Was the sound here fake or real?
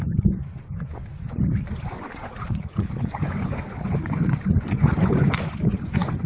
fake